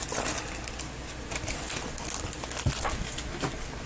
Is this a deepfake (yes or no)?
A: no